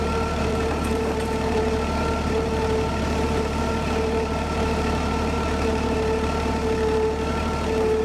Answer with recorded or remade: remade